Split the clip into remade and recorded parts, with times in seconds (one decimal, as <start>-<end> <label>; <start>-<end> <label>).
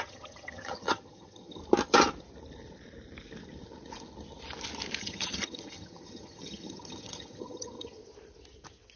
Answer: 0.0-1.6 remade; 1.6-5.0 recorded; 5.0-8.0 remade; 8.0-9.0 recorded